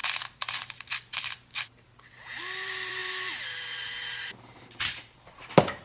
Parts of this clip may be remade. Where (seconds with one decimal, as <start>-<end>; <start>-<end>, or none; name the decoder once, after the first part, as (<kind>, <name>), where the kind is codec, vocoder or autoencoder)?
0.0-5.8 (vocoder, BigVGAN v2)

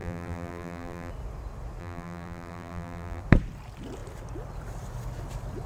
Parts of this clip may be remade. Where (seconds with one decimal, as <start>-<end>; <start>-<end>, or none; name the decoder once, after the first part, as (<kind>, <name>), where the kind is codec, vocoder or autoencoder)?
0.0-1.1 (vocoder, BigVGAN v2); 1.8-3.2